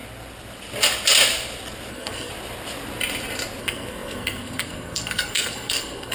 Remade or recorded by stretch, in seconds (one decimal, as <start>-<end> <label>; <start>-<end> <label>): 0.0-1.9 recorded; 1.9-2.3 remade; 2.3-3.6 recorded; 3.6-6.1 remade